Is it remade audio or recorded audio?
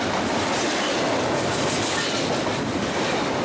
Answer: recorded